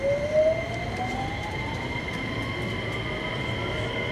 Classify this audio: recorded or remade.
recorded